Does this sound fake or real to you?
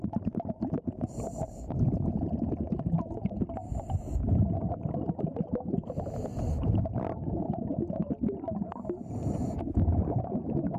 real